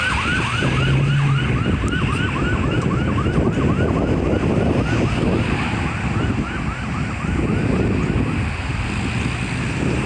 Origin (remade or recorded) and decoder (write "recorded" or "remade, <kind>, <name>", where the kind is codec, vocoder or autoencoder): recorded